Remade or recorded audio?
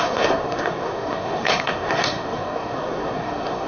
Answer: remade